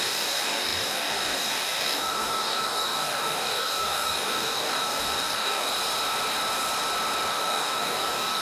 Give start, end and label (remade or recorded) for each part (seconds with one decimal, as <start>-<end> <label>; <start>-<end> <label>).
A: 0.0-5.7 remade; 5.7-7.3 recorded; 7.3-8.4 remade